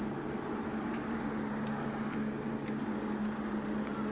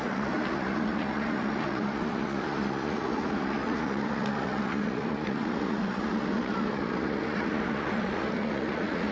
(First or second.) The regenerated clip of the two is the second